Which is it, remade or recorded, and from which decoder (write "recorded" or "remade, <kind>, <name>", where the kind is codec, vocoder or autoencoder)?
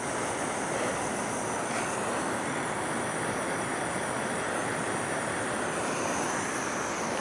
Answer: recorded